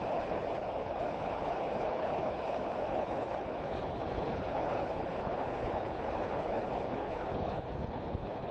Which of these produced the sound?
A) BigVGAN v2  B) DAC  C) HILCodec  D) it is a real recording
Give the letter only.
C